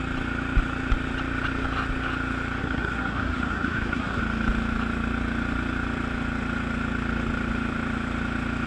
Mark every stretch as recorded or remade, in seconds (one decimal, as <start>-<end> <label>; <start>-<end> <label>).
0.0-2.6 recorded; 2.6-4.2 remade; 4.2-8.7 recorded